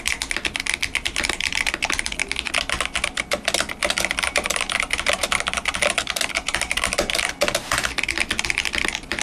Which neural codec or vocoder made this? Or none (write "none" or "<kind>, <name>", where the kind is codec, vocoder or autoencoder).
none